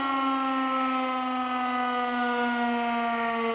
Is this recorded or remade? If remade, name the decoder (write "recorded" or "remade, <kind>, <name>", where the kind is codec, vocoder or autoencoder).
recorded